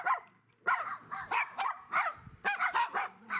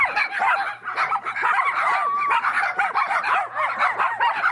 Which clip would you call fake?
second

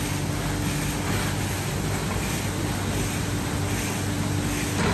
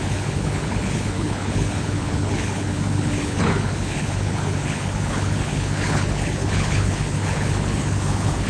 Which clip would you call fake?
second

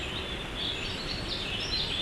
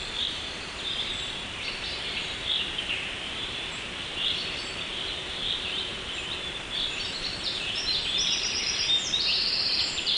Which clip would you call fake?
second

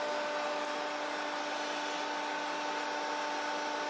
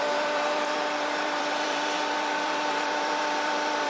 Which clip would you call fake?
second